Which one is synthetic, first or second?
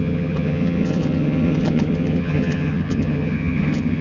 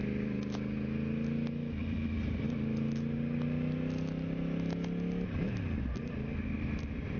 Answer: first